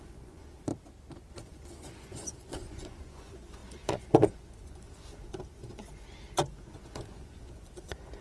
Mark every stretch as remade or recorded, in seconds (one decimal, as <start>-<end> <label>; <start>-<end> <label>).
0.0-0.7 remade; 0.7-1.3 recorded; 1.3-8.2 remade